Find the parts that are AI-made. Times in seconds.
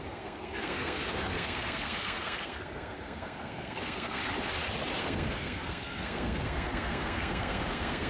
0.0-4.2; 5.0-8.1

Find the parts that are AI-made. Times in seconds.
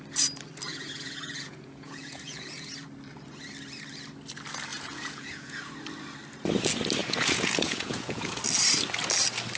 0.7-2.7; 4.7-5.6; 7.0-8.4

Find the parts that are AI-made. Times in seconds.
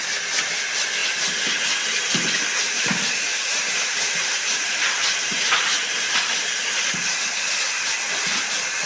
2.6-6.8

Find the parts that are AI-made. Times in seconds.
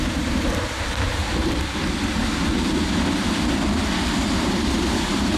0.0-1.2; 4.4-5.4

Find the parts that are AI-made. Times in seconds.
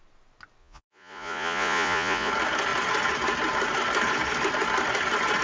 0.6-2.3